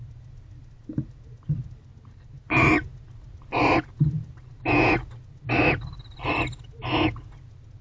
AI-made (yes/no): no